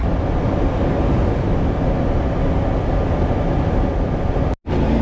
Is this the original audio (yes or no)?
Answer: yes